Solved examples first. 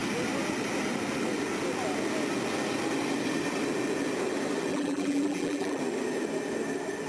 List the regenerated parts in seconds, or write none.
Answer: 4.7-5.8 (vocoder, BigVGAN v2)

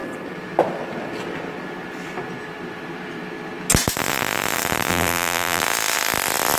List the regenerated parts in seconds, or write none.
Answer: 4.9-5.6 (vocoder, BigVGAN v2)

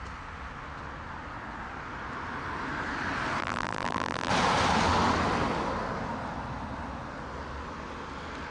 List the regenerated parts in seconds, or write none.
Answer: 3.4-4.3 (vocoder, BigVGAN v2)

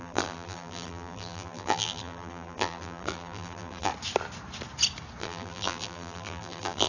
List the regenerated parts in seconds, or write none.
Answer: 0.0-3.9 (vocoder, BigVGAN v2); 5.2-6.9

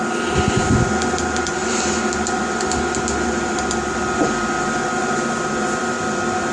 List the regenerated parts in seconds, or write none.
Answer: none

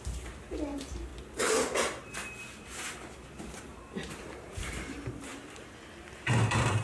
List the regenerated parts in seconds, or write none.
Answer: 0.0-1.1 (vocoder, BigVGAN v2); 4.2-5.3; 6.1-6.8

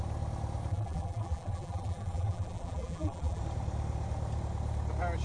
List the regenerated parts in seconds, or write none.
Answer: 0.7-3.4 (vocoder, BigVGAN v2)

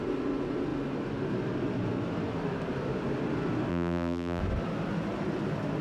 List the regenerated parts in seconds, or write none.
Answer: 3.7-4.4 (vocoder, BigVGAN v2)